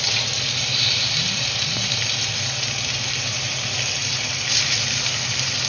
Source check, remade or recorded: recorded